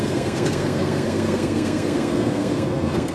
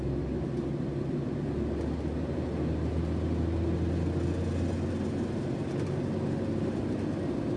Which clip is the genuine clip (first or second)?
second